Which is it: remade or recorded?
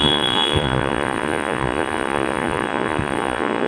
remade